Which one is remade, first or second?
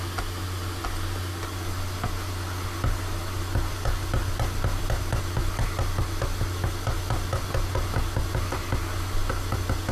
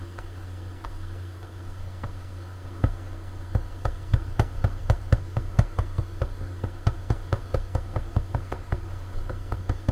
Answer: second